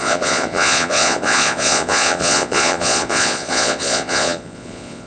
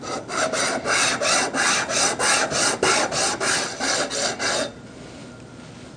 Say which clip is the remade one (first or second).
first